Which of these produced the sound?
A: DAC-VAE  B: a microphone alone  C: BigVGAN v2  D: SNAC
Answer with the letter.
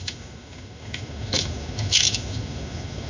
A